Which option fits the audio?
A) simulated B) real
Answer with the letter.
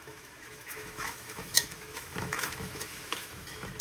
A